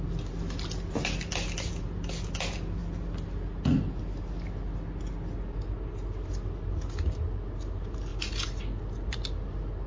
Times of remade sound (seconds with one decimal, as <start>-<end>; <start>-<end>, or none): none